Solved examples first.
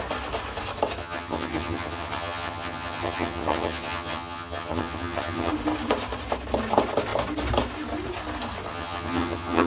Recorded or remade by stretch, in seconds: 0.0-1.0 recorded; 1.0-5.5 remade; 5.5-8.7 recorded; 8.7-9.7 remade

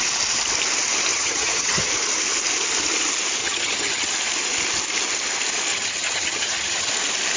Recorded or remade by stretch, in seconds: 0.0-1.1 recorded; 1.1-1.9 remade; 1.9-3.4 recorded; 3.4-4.1 remade; 4.1-5.7 recorded; 5.7-6.9 remade; 6.9-7.4 recorded

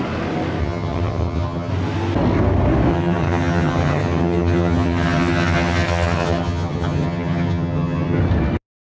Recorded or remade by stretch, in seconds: 0.0-0.6 recorded; 0.6-1.7 remade; 1.7-2.9 recorded; 2.9-8.2 remade; 8.2-8.9 recorded

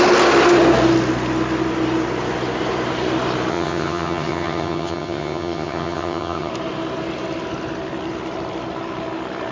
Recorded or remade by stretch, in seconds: 0.0-3.5 recorded; 3.5-6.5 remade; 6.5-9.5 recorded

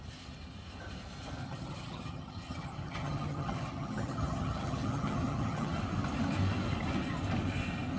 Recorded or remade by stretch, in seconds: 0.0-1.4 recorded; 1.4-5.8 remade; 5.8-8.0 recorded